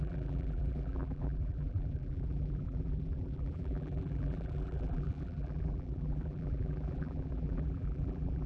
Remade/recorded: remade